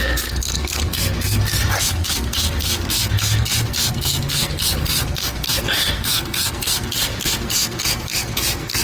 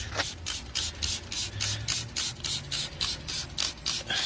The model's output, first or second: first